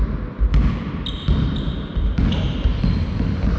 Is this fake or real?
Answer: real